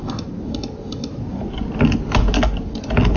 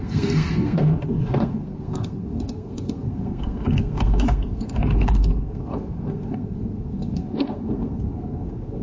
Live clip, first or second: first